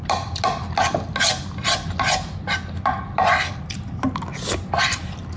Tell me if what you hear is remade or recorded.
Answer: recorded